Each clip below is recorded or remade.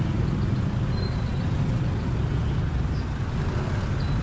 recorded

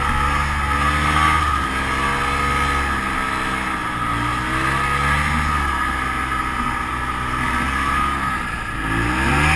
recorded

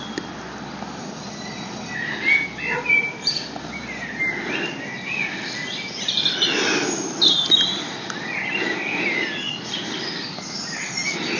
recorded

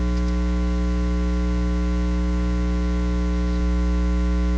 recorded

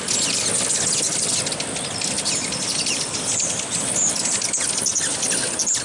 recorded